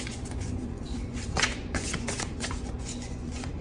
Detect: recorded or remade remade